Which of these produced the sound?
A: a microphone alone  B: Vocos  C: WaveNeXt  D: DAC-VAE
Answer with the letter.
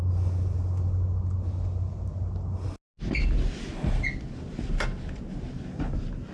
A